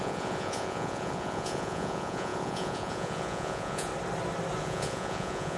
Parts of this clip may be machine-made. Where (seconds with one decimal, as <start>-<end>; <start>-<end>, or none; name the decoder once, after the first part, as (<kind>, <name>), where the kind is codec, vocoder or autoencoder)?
0.0-3.9 (vocoder, Vocos); 4.6-5.6